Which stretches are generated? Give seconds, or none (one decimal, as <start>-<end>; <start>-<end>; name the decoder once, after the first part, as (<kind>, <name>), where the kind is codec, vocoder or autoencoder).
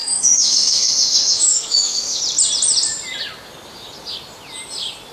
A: 0.0-2.2 (autoencoder, DAC-VAE)